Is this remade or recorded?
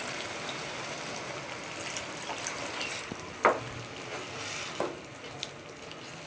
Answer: recorded